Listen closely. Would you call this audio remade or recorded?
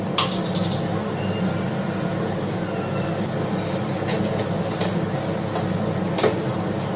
recorded